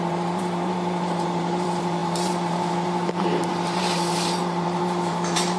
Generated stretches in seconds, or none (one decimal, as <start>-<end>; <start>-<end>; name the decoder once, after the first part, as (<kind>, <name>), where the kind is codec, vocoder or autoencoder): 0.0-5.6 (vocoder, BigVGAN v2)

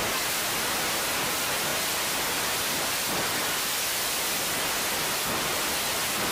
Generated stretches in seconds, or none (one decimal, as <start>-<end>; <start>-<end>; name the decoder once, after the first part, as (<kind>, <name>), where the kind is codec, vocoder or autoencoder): none

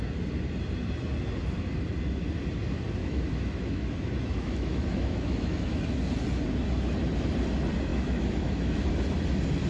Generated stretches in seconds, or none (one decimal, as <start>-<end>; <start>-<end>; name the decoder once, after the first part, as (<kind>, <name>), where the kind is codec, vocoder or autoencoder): 3.0-5.8 (autoencoder, DAC-VAE); 7.9-8.9

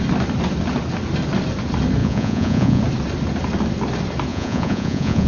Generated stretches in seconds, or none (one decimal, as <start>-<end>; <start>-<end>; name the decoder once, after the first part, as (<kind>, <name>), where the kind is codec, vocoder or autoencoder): 2.0-2.8 (vocoder, Vocos); 4.3-5.3

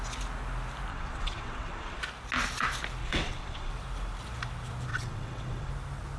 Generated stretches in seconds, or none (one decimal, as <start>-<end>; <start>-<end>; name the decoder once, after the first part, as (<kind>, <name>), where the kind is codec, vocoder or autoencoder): 0.9-2.0 (vocoder, WaveNeXt); 3.0-3.7; 4.9-5.7

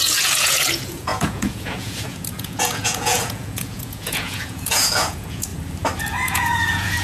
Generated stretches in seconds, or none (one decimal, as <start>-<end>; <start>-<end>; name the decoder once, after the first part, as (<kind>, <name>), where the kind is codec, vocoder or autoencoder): 0.0-5.5 (vocoder, Vocos); 6.0-7.0